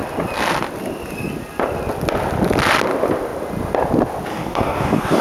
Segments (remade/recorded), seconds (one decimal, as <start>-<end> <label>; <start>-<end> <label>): 0.0-4.3 recorded; 4.3-5.2 remade